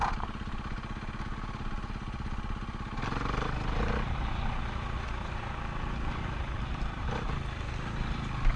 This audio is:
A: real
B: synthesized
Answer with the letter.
A